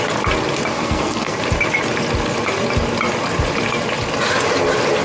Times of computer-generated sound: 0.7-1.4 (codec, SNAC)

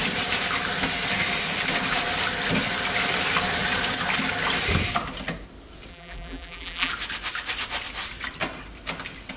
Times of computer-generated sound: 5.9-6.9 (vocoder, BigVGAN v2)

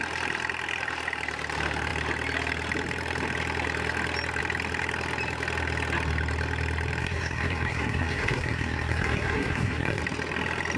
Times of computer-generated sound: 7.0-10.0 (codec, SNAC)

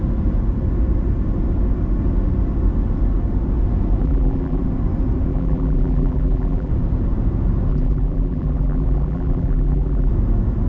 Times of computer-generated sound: 4.0-4.6 (vocoder, BigVGAN v2); 5.3-6.7; 7.7-10.1